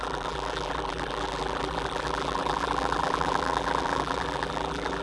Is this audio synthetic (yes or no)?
yes